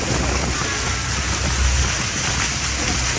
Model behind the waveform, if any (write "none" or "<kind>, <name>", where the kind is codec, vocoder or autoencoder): none